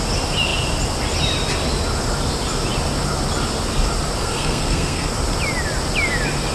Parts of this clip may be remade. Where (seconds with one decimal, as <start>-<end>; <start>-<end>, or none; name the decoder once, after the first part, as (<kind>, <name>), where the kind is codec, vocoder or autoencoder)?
4.2-5.1 (codec, SNAC)